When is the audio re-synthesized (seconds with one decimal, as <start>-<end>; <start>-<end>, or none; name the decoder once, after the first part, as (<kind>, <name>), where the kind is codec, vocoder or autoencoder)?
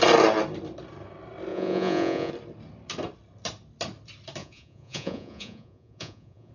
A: 1.5-2.3 (vocoder, Vocos); 4.4-6.5